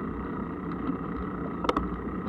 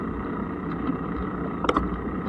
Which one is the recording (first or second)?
first